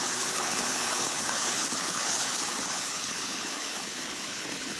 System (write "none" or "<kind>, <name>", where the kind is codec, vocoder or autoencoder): codec, HILCodec